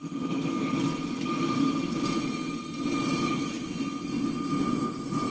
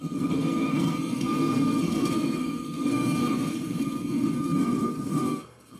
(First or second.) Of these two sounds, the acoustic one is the first